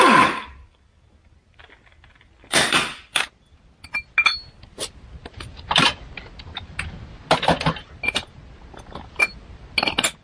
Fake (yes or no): no